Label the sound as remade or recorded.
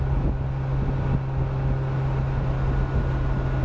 recorded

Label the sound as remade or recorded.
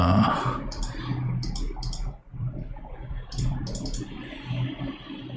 remade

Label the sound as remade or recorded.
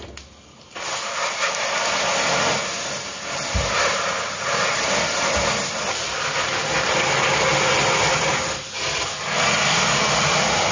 recorded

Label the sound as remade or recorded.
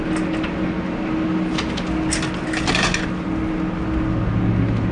recorded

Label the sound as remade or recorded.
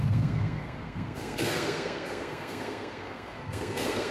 remade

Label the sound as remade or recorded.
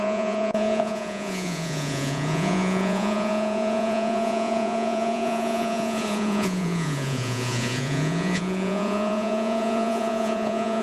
remade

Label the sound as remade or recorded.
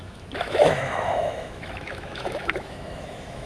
remade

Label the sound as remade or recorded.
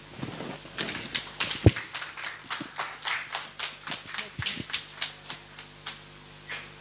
recorded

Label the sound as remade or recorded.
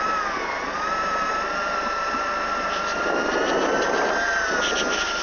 remade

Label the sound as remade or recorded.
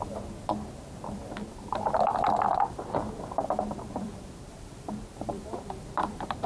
remade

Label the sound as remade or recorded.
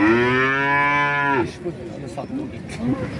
recorded